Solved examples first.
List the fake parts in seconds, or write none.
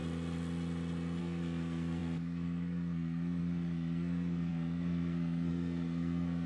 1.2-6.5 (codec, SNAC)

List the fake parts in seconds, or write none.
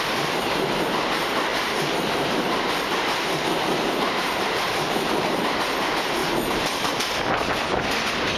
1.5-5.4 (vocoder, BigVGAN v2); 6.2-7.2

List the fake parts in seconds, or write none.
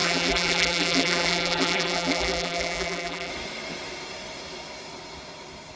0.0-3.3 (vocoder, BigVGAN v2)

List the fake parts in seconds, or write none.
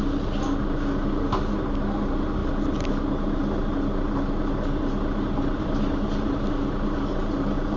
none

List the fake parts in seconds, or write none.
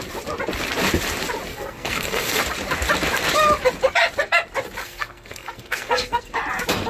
1.5-2.4 (codec, SNAC); 4.8-6.3